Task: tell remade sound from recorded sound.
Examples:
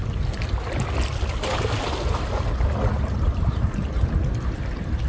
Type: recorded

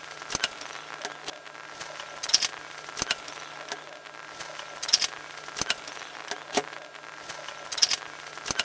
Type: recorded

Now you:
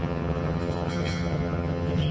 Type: remade